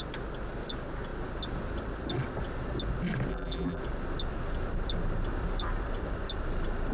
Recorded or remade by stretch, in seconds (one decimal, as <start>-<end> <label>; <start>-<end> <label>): 0.0-3.3 recorded; 3.3-3.8 remade; 3.8-6.9 recorded